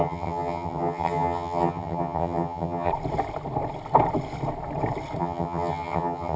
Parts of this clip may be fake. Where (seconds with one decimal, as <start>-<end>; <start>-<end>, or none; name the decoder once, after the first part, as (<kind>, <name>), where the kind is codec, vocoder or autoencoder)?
0.0-2.9 (vocoder, HiFi-GAN); 5.2-6.4